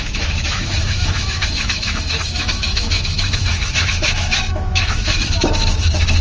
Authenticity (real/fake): fake